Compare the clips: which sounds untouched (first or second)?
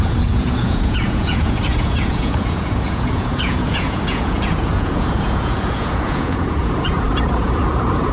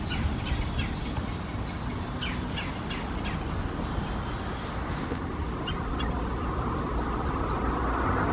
second